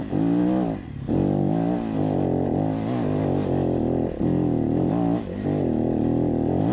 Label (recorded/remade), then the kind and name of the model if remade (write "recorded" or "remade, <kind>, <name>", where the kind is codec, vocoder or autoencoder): recorded